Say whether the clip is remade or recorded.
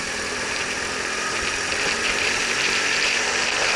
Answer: recorded